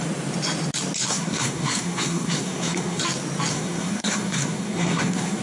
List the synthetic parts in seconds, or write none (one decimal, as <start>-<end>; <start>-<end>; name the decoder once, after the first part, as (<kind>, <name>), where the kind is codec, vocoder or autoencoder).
1.1-3.0 (codec, SNAC); 3.5-5.4